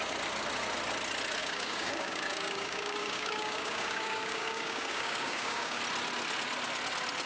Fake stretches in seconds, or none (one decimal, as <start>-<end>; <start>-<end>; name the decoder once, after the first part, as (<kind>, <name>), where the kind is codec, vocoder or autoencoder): 1.4-5.8 (codec, DAC)